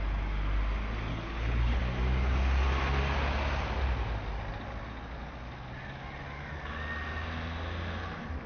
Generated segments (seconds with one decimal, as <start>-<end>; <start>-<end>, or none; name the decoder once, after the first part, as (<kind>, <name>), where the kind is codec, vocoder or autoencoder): 1.1-1.8 (codec, HILCodec)